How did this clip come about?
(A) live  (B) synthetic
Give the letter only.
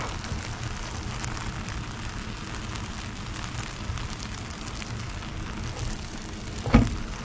A